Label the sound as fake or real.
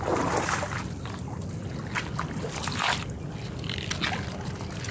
real